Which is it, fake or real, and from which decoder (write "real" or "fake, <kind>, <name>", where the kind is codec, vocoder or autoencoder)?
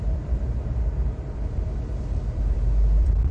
fake, vocoder, BigVGAN v2